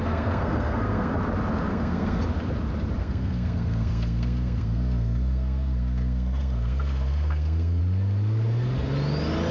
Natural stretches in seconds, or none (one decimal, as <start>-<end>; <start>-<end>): 1.1-1.7; 2.2-3.0; 7.8-9.5